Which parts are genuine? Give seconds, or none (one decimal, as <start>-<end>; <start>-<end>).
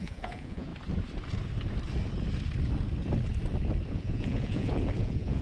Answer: 0.7-3.9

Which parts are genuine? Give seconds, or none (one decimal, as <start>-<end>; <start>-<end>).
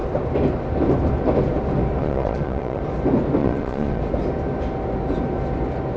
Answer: 0.0-2.0; 2.8-3.4; 4.0-6.0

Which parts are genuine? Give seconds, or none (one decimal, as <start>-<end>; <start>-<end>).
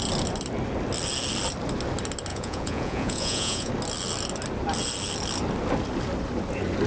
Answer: 0.0-2.3; 3.7-6.9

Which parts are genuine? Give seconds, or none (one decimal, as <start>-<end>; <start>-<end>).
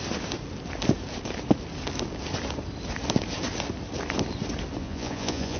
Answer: 0.0-4.8